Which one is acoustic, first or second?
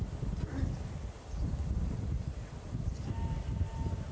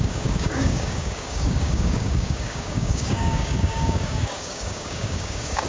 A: first